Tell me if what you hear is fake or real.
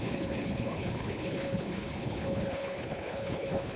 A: fake